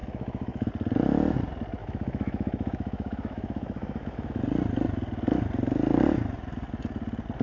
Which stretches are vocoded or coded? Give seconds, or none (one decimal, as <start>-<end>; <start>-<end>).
0.0-0.7; 1.8-4.4